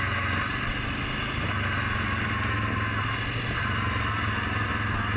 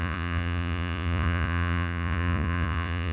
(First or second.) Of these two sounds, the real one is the first